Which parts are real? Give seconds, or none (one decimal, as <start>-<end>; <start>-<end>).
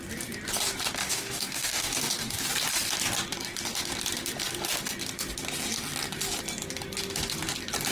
0.0-1.0; 2.5-7.9